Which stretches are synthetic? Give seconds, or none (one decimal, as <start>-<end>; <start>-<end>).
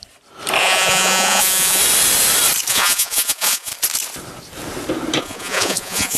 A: 0.6-1.8; 2.7-3.7; 5.2-6.2